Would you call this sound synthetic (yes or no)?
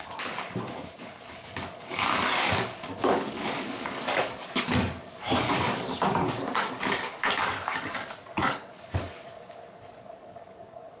yes